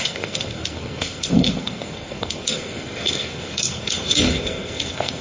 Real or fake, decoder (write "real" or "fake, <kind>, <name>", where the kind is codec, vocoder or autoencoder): fake, codec, SNAC